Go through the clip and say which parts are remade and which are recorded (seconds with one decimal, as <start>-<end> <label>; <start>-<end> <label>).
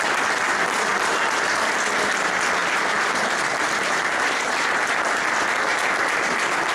0.0-2.6 recorded; 2.6-4.9 remade; 4.9-6.7 recorded